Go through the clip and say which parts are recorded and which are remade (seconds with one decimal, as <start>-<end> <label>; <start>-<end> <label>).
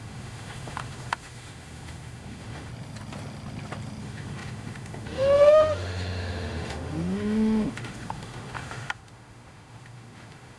0.0-2.7 remade; 2.7-4.0 recorded; 4.0-10.6 remade